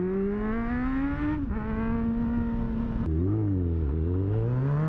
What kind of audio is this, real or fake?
real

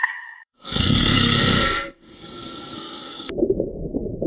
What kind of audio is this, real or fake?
fake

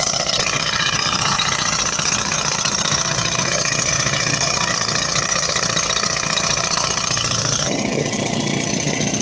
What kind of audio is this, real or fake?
fake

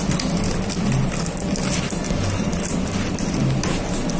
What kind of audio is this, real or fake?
real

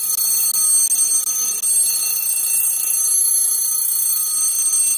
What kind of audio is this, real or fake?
real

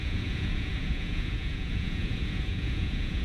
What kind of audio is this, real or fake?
fake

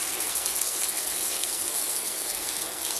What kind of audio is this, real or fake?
fake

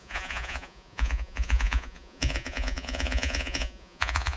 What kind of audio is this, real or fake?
fake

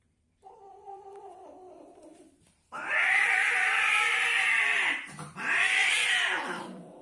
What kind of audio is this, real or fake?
fake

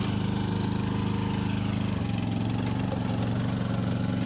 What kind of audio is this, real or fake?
real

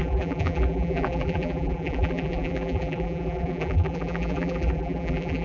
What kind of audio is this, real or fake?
fake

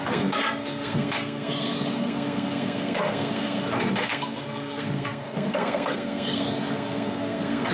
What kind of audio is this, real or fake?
fake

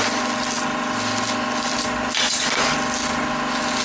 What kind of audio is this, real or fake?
real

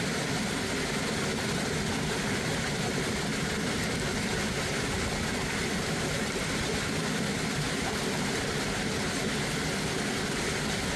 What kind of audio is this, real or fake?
real